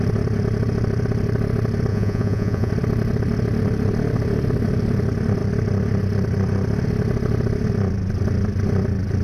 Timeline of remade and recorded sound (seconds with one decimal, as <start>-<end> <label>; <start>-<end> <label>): 0.0-1.9 recorded; 1.9-2.7 remade; 2.7-9.2 recorded